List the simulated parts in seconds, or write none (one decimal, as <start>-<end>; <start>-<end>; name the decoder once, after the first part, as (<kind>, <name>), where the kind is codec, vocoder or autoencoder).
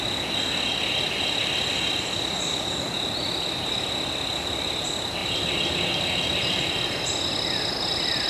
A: 5.2-6.6 (vocoder, BigVGAN v2)